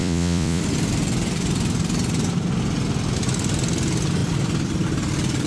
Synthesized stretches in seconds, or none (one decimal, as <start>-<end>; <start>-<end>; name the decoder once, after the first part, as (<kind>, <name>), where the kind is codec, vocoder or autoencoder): 0.0-0.6 (vocoder, Vocos)